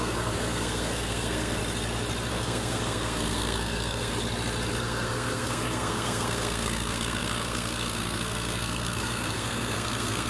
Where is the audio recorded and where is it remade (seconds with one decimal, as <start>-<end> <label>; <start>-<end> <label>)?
0.0-1.6 remade; 1.6-2.3 recorded; 2.3-4.1 remade; 4.1-4.8 recorded; 4.8-10.3 remade